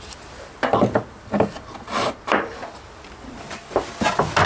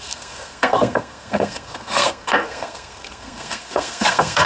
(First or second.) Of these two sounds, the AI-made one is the second